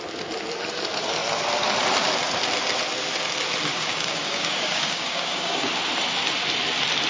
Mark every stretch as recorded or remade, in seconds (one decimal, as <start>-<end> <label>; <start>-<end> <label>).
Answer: 0.0-3.7 recorded; 3.7-5.7 remade; 5.7-7.1 recorded